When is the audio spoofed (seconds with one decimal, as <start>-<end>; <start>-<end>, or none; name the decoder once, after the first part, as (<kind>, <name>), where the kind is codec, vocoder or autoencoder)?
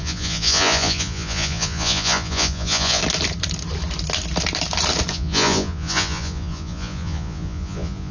0.0-3.0 (vocoder, Vocos); 5.1-8.1